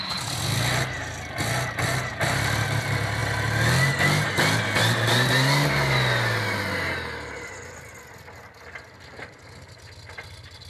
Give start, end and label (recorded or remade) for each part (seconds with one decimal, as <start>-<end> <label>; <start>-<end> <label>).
0.0-10.7 recorded